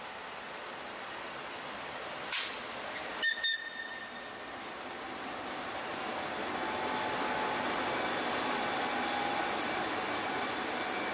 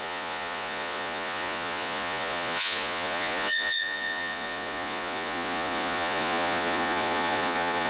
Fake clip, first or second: second